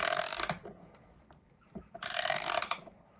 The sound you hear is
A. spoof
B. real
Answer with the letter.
B